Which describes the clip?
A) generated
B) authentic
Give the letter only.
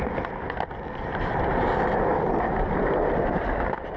B